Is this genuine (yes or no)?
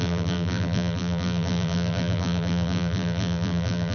no